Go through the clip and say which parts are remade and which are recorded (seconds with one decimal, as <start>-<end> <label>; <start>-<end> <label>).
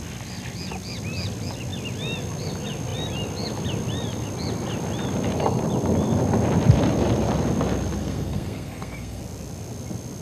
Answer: 0.0-8.0 recorded; 8.0-9.2 remade; 9.2-10.2 recorded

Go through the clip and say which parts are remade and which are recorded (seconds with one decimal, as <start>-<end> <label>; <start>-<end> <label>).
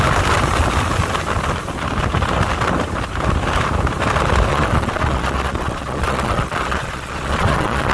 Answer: 0.0-4.5 recorded; 4.5-7.9 remade